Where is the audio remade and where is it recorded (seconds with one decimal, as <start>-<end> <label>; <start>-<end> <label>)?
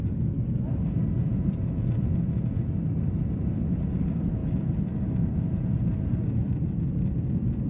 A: 0.0-1.3 recorded; 1.3-2.6 remade; 2.6-7.7 recorded